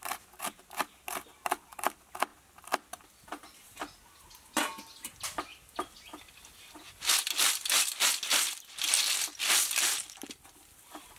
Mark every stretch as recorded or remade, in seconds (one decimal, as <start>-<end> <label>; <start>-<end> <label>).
0.0-11.2 recorded